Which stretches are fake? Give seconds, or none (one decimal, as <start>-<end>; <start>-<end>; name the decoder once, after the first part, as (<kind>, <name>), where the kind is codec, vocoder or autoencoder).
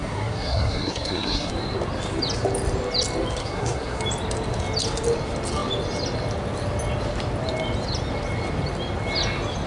0.0-1.5 (codec, SNAC); 3.4-4.0